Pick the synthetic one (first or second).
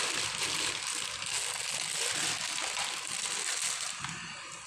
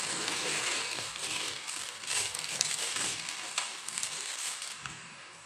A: second